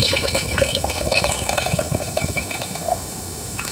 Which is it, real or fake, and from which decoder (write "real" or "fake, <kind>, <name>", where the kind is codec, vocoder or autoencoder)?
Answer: fake, autoencoder, DAC-VAE